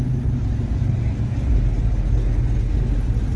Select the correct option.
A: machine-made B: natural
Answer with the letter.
B